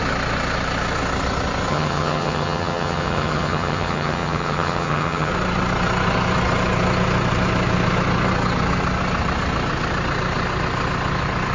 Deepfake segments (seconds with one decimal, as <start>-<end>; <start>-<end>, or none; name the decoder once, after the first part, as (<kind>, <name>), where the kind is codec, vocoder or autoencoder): 1.7-5.3 (vocoder, HiFi-GAN)